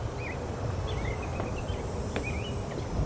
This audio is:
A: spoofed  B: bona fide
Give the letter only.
B